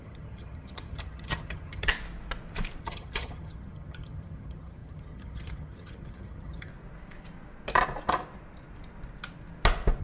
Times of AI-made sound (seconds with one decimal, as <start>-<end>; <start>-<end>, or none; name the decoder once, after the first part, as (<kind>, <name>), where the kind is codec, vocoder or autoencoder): 0.0-1.9 (vocoder, HiFi-GAN); 2.8-6.7